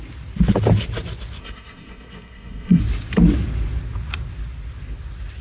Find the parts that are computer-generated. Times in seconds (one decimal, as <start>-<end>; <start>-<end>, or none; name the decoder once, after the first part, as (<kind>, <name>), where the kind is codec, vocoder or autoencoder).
1.4-2.8 (codec, SNAC)